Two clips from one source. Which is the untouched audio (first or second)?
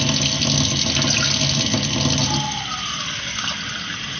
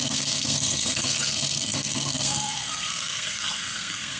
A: first